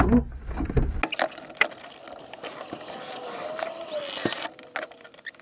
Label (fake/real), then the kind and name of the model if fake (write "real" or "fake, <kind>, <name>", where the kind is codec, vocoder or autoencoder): real